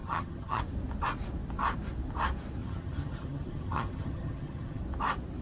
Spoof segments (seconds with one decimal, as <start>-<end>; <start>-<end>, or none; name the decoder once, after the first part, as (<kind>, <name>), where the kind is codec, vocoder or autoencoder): 0.0-0.6 (vocoder, HiFi-GAN); 2.6-4.8